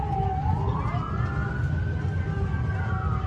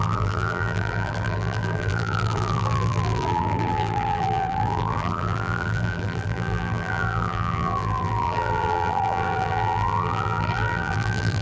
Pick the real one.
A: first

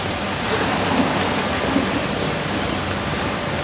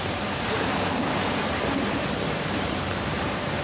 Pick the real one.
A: first